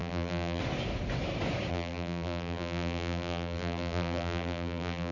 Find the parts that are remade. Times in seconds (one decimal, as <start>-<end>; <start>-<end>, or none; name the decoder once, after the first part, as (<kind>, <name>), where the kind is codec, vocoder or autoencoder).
0.0-0.6 (vocoder, BigVGAN v2); 1.7-5.1